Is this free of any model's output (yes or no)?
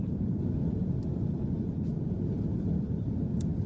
yes